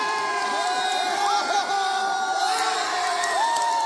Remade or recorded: remade